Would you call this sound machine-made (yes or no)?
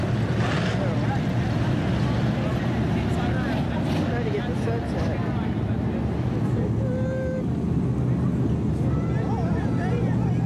no